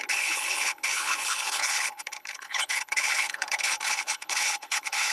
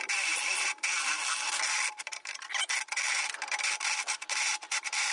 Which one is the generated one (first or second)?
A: first